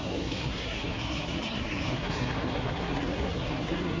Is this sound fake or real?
fake